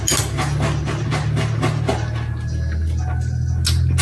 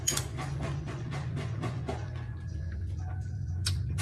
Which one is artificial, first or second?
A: second